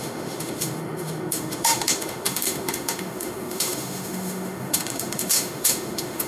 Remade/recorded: remade